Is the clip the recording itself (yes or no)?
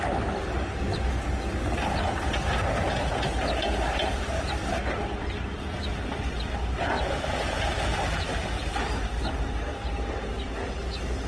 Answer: yes